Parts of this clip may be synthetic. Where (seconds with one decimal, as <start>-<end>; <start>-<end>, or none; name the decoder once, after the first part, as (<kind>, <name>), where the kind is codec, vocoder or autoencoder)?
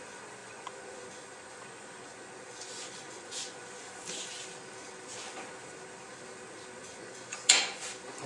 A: 0.4-3.9 (vocoder, Vocos); 6.9-7.8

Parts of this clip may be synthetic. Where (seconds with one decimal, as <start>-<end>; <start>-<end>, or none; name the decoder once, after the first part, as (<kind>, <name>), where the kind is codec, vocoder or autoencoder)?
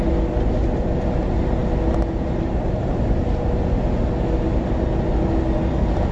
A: none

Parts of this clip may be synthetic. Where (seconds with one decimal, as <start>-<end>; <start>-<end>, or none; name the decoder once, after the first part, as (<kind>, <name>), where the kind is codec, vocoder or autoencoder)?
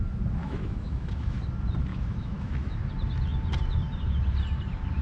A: 0.4-1.4 (autoencoder, DAC-VAE); 1.9-2.9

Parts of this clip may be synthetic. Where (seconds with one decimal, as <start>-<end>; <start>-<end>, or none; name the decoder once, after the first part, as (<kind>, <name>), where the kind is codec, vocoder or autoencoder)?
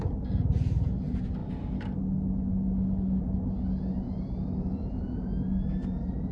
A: none